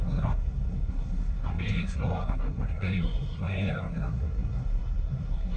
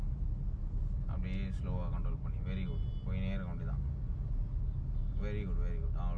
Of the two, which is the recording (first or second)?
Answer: second